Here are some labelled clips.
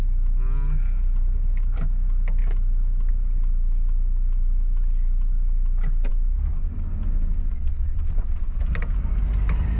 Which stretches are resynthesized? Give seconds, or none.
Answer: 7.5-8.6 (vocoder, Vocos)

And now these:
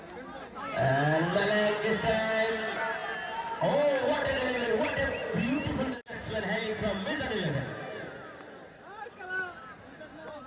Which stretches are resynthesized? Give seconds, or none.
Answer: none

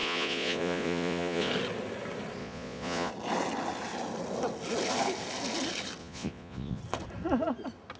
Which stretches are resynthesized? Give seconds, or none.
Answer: 0.0-1.5 (vocoder, Vocos); 2.4-3.1; 6.0-6.8

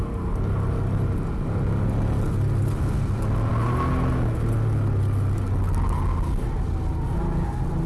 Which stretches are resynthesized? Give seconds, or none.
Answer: none

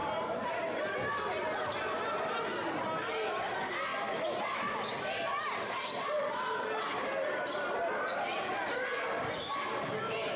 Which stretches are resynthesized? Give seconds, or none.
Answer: none

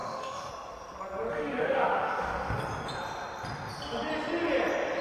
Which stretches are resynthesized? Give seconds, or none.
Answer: 0.0-0.5 (autoencoder, DAC-VAE); 1.3-2.6